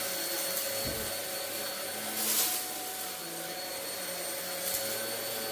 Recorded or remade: recorded